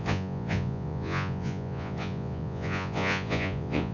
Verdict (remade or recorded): remade